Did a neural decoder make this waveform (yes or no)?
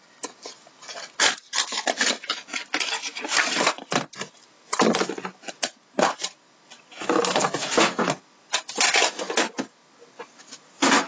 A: no